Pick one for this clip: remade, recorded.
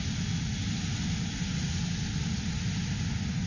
recorded